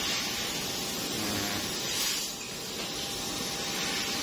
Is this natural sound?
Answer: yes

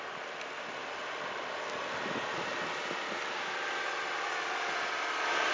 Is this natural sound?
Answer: yes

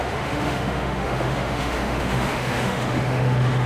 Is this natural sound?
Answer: no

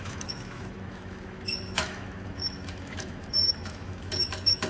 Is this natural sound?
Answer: no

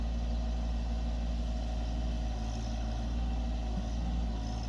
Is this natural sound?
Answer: yes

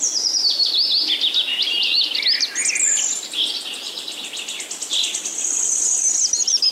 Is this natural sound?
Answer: yes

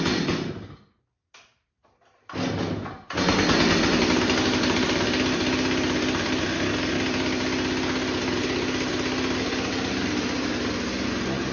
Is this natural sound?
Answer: yes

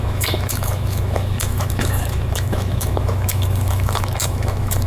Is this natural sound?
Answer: no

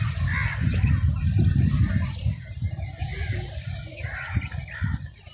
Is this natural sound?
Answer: yes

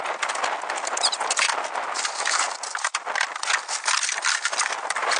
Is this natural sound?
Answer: yes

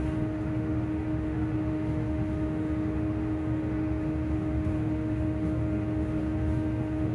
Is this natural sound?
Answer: no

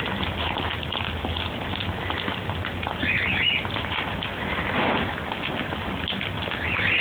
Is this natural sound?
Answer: yes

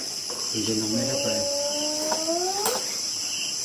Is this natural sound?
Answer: yes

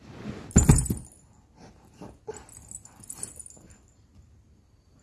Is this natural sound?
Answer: yes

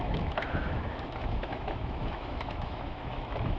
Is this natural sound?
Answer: no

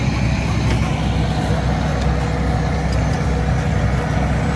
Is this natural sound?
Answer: yes